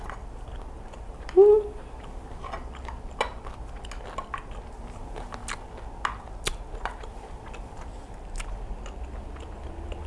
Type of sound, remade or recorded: recorded